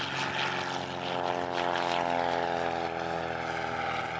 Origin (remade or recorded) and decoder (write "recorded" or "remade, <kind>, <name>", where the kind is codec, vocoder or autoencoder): recorded